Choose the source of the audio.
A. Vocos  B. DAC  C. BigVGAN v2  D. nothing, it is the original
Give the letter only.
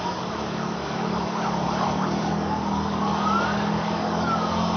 B